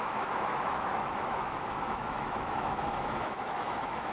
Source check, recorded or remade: remade